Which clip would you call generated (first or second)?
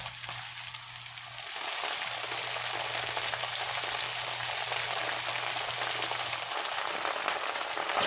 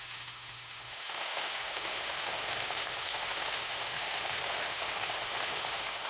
second